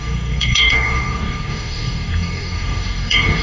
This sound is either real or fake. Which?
fake